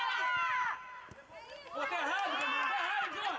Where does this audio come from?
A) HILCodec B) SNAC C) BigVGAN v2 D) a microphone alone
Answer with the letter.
D